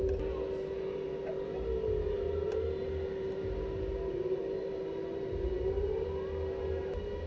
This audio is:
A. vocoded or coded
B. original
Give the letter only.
B